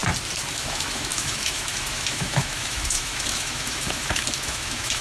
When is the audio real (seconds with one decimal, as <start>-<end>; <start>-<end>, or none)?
0.0-0.5